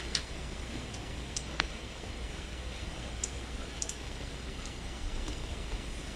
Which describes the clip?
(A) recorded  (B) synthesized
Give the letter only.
B